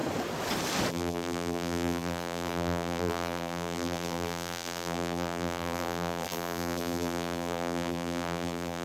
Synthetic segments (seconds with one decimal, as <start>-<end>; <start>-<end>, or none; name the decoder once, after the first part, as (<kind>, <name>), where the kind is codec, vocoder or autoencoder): 0.9-8.8 (vocoder, BigVGAN v2)